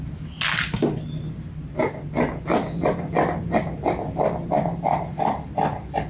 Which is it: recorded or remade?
recorded